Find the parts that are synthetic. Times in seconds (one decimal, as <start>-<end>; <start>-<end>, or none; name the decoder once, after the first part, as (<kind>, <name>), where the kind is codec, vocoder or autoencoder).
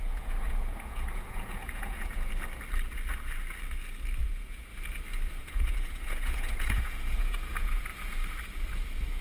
0.0-2.3 (vocoder, Vocos); 4.2-4.7; 5.4-7.9